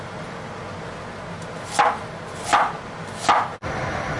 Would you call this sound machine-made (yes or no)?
no